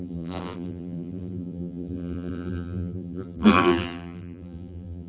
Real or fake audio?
fake